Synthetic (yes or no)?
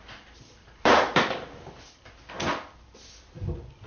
yes